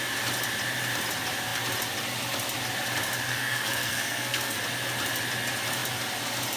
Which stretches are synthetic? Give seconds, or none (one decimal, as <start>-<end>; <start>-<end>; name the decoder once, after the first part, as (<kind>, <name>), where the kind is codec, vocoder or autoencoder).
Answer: 3.3-4.6 (codec, SNAC)